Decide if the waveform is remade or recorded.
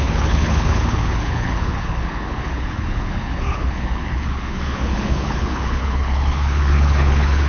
remade